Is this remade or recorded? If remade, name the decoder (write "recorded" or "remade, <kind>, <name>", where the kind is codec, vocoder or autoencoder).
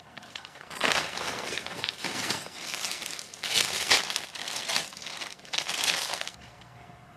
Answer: remade, codec, SNAC